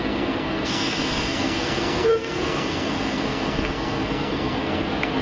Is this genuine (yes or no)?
no